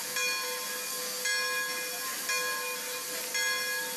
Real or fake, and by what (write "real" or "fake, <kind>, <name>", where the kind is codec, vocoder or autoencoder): real